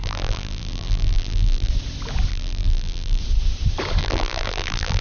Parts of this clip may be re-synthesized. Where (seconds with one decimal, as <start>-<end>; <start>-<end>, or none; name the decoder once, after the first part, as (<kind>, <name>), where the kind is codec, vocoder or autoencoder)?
0.0-1.7 (vocoder, BigVGAN v2); 2.3-3.2; 4.0-5.0